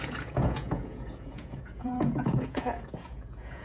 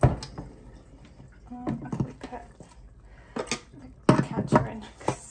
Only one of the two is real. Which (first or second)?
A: second